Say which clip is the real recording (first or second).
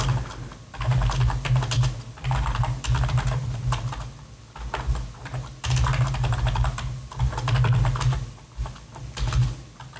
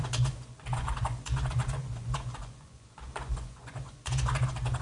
first